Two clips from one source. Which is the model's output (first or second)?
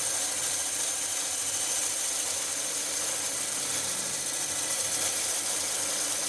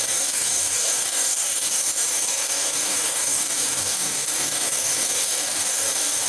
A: second